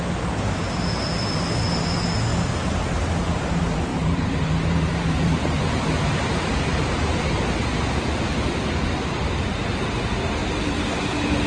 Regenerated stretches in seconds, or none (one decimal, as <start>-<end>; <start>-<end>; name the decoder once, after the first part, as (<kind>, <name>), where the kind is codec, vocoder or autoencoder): 3.9-7.5 (vocoder, BigVGAN v2); 10.4-11.0